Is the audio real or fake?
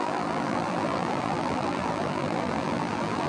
fake